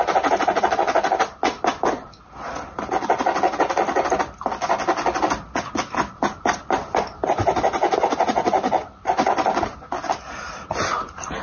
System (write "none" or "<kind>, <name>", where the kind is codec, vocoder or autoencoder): none